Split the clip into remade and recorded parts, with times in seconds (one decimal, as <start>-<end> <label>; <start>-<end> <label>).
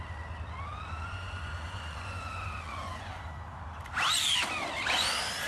0.0-0.7 recorded; 0.7-3.2 remade; 3.2-5.5 recorded